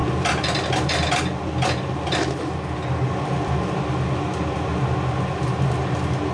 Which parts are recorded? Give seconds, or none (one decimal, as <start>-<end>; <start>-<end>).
0.0-6.3